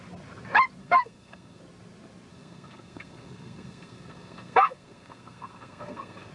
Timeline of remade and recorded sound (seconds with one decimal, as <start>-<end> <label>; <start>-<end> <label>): 0.0-0.8 recorded; 0.8-1.6 remade; 1.6-2.3 recorded; 2.3-6.3 remade